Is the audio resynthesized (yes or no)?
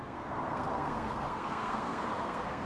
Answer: yes